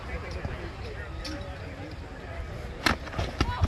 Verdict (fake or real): real